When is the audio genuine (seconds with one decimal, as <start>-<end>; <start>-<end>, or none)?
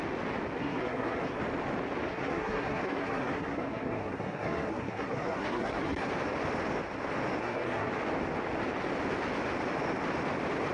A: 0.0-0.6; 1.4-2.1; 6.1-7.4; 7.9-10.7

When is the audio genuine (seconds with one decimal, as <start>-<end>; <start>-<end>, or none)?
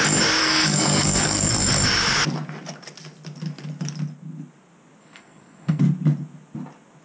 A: 0.0-0.4; 1.5-5.0; 5.8-7.0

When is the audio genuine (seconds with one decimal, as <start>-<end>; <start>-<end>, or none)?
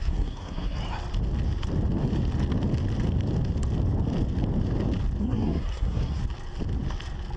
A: 0.8-5.2; 6.2-7.4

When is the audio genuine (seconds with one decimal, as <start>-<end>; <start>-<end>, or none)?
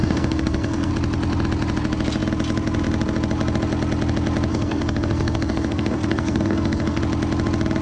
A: 0.9-4.5; 7.0-7.8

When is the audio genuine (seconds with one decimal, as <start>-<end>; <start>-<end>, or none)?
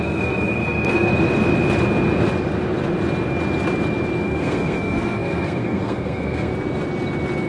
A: 1.1-4.2; 6.5-7.5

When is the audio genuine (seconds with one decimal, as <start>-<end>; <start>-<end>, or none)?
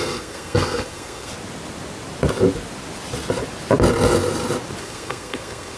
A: 1.3-4.8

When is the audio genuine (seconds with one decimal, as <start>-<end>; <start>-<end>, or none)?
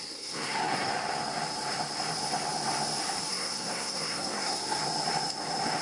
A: 0.9-3.3; 4.8-5.8